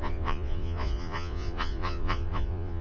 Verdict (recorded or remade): remade